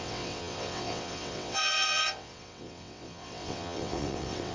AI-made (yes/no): yes